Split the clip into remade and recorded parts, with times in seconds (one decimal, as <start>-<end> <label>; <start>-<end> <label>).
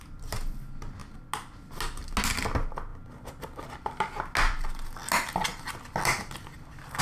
0.0-7.0 recorded